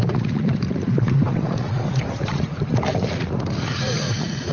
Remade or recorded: remade